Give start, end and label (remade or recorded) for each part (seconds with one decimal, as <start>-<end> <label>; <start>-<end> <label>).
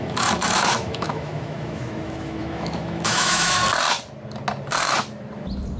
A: 0.0-3.6 remade; 3.6-5.8 recorded